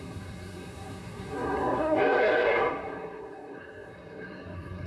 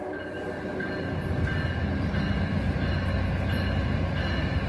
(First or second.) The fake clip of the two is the first